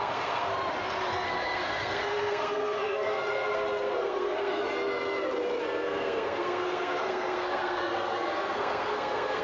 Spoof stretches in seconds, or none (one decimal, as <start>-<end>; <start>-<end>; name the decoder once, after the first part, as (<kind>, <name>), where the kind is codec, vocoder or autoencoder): 0.0-0.5 (codec, SNAC); 1.1-4.6; 5.6-9.4